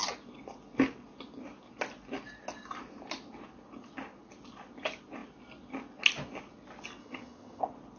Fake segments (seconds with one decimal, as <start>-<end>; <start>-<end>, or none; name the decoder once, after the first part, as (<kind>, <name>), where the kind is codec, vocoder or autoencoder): 7.0-7.6 (vocoder, HiFi-GAN)